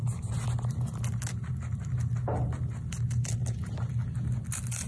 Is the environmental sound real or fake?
real